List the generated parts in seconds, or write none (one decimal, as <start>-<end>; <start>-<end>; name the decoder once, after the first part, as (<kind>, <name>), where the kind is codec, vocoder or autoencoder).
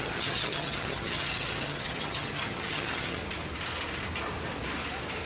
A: 0.0-3.2 (vocoder, HiFi-GAN)